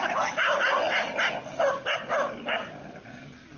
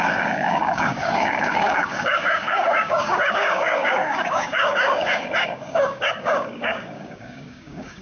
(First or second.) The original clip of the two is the first